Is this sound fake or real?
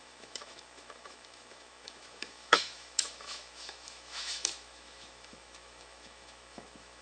fake